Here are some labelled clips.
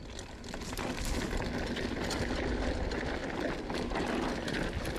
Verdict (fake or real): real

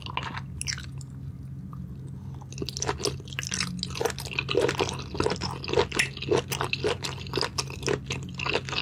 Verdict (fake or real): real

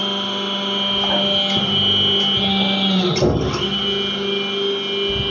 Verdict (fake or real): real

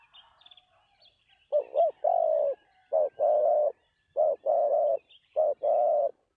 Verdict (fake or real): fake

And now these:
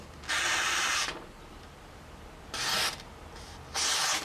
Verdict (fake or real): fake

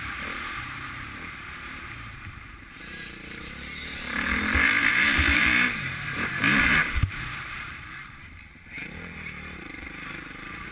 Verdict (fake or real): fake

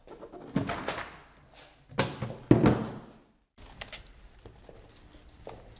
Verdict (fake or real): real